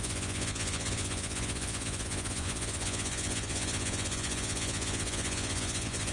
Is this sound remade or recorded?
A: remade